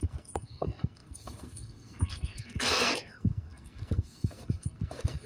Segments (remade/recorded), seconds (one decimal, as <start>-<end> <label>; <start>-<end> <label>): 0.0-5.3 remade